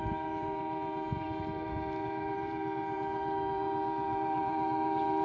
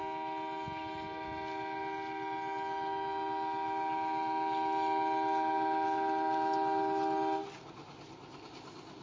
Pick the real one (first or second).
second